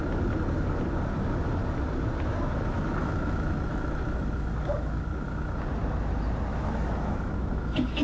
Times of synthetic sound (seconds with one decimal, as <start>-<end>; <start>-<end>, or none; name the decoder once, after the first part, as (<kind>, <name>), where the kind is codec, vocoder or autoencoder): 3.0-5.6 (autoencoder, DAC-VAE); 6.5-8.0

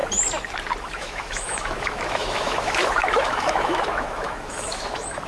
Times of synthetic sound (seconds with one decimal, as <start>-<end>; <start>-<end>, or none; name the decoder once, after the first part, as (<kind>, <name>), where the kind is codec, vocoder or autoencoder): 0.8-5.3 (autoencoder, DAC-VAE)

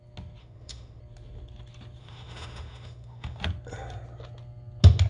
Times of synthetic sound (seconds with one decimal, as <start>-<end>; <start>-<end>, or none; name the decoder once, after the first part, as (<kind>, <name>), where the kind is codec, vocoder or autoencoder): 0.4-1.0 (autoencoder, DAC-VAE); 2.0-3.4

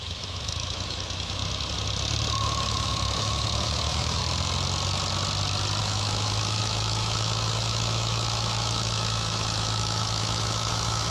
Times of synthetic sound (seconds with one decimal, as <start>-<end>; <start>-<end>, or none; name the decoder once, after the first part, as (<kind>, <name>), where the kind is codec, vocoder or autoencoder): 0.0-1.4 (autoencoder, DAC-VAE); 2.3-4.2; 5.8-11.1

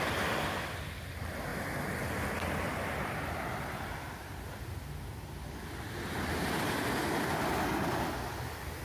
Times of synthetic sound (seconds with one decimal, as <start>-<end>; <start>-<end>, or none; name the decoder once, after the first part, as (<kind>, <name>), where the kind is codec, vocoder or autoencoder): none